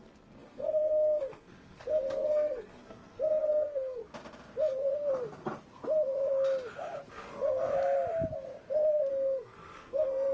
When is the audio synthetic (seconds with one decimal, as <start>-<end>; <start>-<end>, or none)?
0.0-4.0; 7.1-7.7; 9.1-10.3